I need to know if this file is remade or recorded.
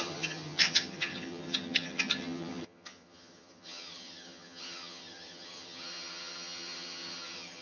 remade